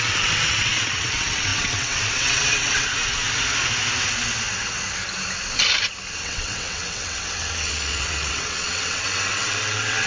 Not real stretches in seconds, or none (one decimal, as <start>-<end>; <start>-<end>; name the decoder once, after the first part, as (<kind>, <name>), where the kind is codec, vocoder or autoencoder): 0.0-2.9 (vocoder, WaveNeXt); 6.2-10.1